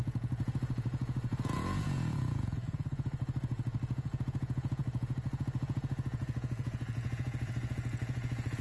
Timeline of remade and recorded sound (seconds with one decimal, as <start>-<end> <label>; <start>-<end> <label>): 0.0-8.6 remade